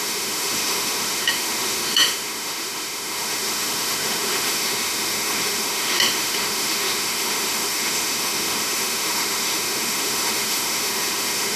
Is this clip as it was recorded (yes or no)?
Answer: no